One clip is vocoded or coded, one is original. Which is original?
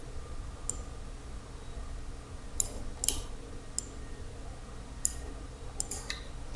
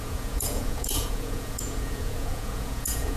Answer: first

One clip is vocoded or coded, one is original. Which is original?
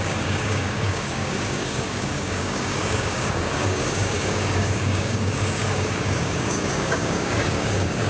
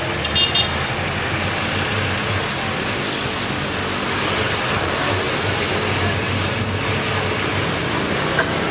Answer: second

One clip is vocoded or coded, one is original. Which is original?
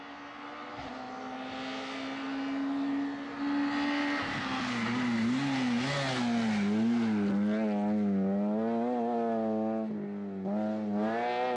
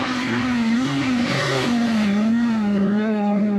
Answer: first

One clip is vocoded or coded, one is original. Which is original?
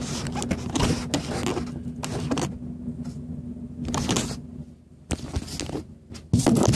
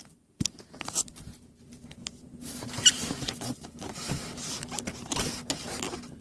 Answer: first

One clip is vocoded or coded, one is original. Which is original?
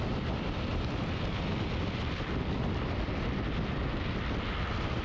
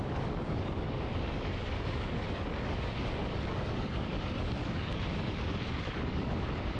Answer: first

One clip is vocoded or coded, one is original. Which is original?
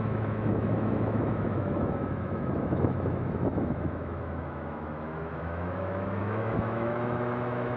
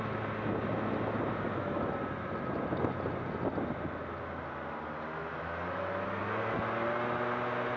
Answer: second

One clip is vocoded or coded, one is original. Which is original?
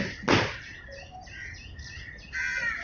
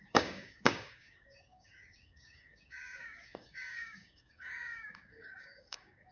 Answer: first